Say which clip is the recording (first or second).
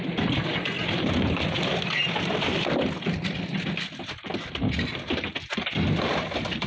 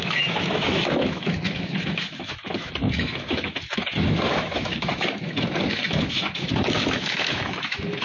first